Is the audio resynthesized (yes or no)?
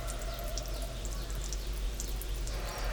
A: no